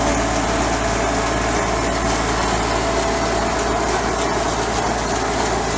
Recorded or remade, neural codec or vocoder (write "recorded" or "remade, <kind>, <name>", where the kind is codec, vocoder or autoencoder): recorded